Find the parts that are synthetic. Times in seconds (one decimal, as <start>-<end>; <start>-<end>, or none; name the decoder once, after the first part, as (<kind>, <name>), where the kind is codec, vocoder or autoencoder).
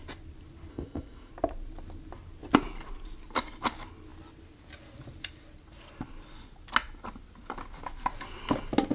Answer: 0.7-1.3 (codec, ZipCodec)